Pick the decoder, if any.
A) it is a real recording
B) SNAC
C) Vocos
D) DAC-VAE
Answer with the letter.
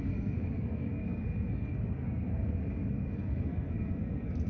B